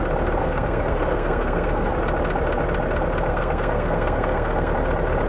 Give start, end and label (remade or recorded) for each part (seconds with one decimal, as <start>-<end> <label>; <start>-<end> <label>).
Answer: 0.0-0.4 recorded; 0.4-1.9 remade; 1.9-3.3 recorded; 3.3-4.7 remade; 4.7-5.3 recorded